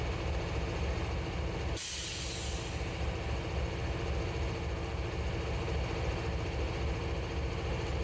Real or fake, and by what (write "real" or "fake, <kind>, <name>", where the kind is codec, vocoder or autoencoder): real